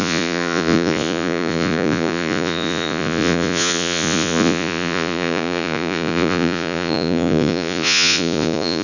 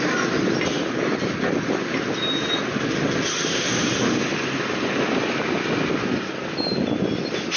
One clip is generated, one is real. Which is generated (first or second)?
first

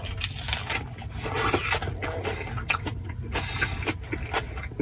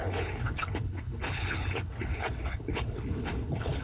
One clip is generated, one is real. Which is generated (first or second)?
second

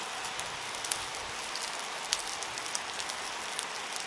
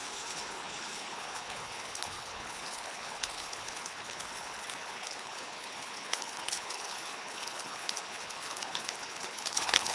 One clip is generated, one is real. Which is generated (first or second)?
second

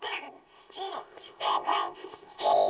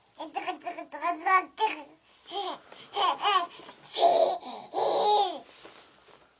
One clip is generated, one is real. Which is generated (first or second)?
first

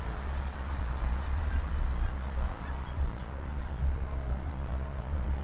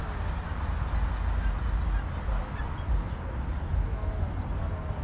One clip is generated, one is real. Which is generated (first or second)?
first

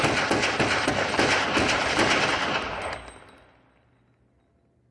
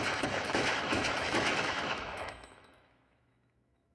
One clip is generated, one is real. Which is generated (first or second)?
second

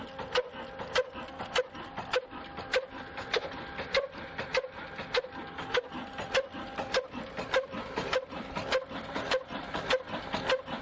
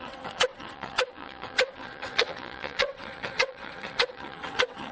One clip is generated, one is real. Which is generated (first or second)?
second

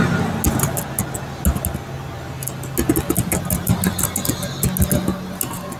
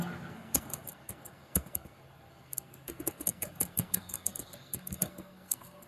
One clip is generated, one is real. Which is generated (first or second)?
second